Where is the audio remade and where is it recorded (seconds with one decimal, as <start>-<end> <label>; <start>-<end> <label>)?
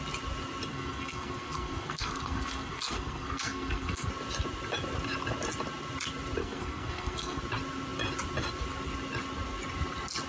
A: 0.0-0.7 recorded; 0.7-4.1 remade; 4.1-6.4 recorded; 6.4-7.4 remade; 7.4-10.3 recorded